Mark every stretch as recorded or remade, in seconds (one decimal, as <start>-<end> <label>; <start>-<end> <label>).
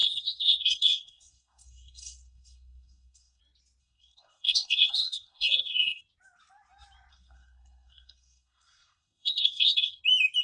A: 0.0-3.4 remade; 3.4-3.8 recorded; 3.8-6.0 remade; 6.0-7.1 recorded; 7.1-10.0 remade; 10.0-10.4 recorded